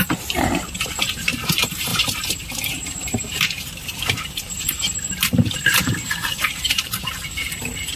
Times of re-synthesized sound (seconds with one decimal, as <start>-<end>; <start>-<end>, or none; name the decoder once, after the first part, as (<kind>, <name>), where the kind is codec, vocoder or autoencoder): 0.0-8.0 (vocoder, BigVGAN v2)